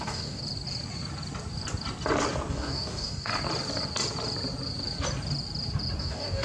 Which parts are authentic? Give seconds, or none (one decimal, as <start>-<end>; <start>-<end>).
0.4-2.5; 3.3-6.0